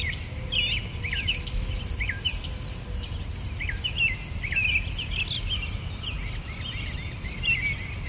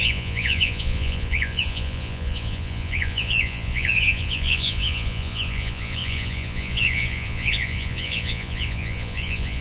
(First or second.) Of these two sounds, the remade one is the second